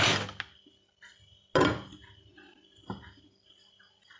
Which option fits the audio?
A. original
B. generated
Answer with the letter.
A